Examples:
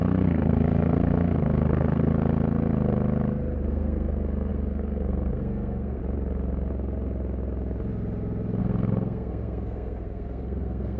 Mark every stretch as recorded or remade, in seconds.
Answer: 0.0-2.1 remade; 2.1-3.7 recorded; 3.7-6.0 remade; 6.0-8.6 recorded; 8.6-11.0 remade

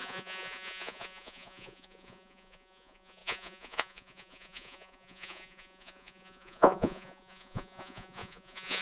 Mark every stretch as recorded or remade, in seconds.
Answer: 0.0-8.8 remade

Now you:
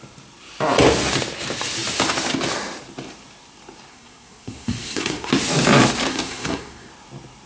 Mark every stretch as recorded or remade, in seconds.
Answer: 0.0-3.9 recorded; 3.9-5.3 remade; 5.3-6.1 recorded; 6.1-6.9 remade; 6.9-7.5 recorded